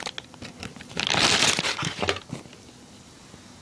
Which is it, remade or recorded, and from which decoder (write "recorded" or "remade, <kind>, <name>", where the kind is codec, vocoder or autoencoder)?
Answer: recorded